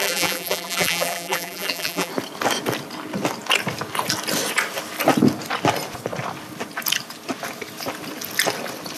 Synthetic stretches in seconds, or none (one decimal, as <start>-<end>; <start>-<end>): 0.0-2.1